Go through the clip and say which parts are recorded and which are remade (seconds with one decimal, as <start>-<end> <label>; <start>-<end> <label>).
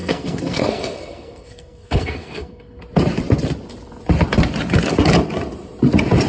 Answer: 0.0-2.8 remade; 2.8-6.3 recorded